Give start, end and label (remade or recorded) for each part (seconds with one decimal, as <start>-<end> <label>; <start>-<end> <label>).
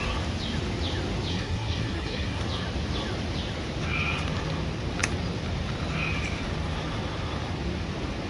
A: 0.0-1.3 recorded; 1.3-2.4 remade; 2.4-8.3 recorded